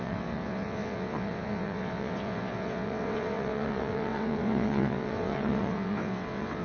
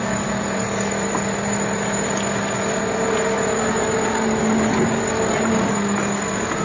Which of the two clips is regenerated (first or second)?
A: first